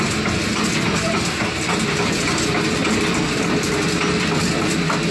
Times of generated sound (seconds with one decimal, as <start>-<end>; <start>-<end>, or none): none